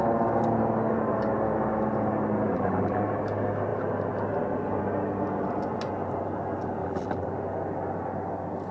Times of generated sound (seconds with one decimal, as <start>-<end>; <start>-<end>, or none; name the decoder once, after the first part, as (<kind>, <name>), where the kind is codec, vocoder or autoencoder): 2.5-3.0 (vocoder, BigVGAN v2); 6.8-7.3